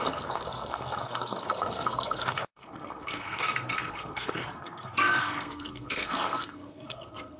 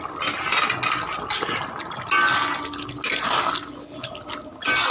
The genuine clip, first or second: second